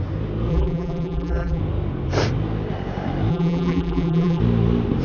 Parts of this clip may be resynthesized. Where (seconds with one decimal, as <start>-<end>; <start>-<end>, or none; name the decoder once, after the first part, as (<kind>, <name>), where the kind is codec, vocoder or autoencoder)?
0.5-1.6 (vocoder, BigVGAN v2); 3.3-4.4